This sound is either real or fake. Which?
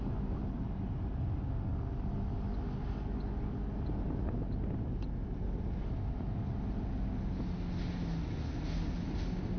real